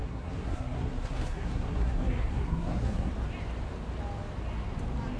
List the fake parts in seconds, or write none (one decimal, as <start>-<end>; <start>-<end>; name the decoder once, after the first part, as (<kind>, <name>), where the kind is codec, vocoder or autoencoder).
0.0-3.1 (codec, SNAC)